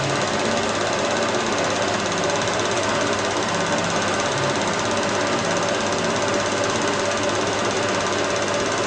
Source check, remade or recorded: recorded